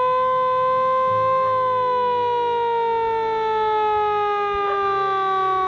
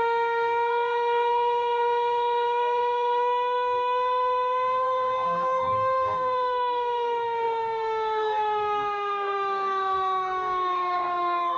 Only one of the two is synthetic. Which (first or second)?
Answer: second